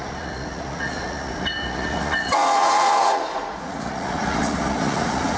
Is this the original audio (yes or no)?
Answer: no